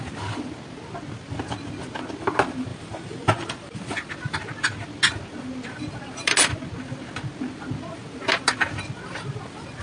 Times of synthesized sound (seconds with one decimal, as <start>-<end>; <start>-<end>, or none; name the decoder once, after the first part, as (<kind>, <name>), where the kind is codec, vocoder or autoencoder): 2.7-3.8 (vocoder, BigVGAN v2)